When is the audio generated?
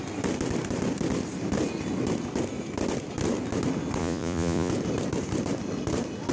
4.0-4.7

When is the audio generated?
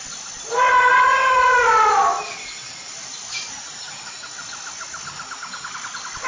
none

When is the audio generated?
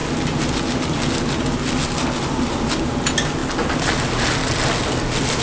none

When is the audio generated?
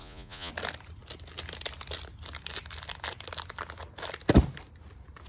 0.0-0.5